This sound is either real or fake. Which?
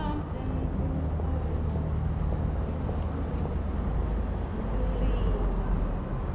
real